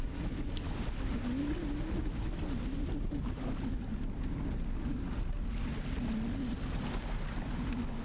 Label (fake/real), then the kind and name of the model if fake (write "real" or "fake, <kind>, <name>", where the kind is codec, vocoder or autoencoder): real